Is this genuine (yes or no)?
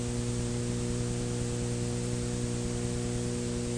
yes